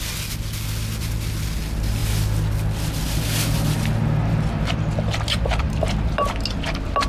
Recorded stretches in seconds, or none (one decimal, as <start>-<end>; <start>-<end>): 0.0-7.1